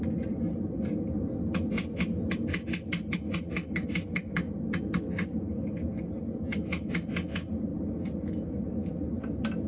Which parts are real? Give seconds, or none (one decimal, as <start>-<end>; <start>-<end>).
0.0-9.7